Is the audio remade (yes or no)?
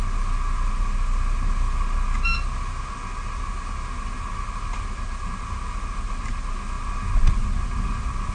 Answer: no